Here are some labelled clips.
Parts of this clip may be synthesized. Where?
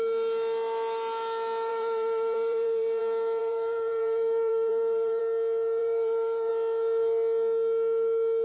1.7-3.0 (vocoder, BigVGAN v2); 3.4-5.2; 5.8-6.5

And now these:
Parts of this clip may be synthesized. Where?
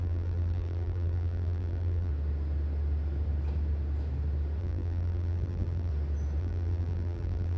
0.0-2.1 (vocoder, BigVGAN v2); 4.6-5.9; 6.4-7.6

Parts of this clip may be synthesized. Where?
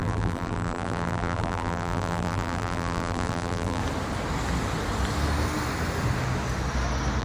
0.0-3.8 (vocoder, BigVGAN v2)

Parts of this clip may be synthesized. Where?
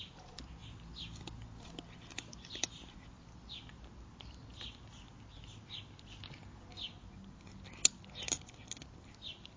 0.6-3.2 (vocoder, BigVGAN v2)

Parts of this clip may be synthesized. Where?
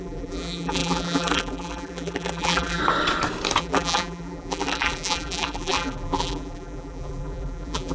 0.0-2.8 (vocoder, BigVGAN v2); 3.6-7.9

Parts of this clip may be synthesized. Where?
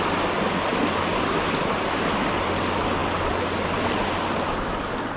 0.7-1.6 (vocoder, BigVGAN v2)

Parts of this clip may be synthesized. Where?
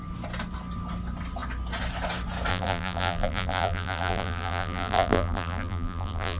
2.5-6.4 (vocoder, BigVGAN v2)